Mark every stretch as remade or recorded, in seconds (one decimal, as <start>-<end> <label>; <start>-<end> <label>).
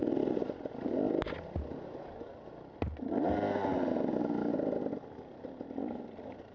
0.0-1.6 remade; 1.6-6.5 recorded